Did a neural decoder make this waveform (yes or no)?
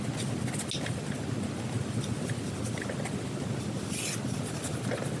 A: no